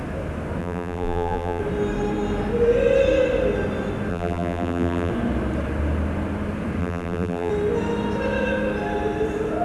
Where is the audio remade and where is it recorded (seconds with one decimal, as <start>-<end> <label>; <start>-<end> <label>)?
0.0-0.6 recorded; 0.6-1.6 remade; 1.6-4.1 recorded; 4.1-5.1 remade; 5.1-6.8 recorded; 6.8-7.5 remade; 7.5-9.6 recorded